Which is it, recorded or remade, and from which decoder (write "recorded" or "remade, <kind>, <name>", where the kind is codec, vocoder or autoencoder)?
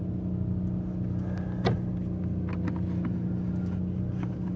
recorded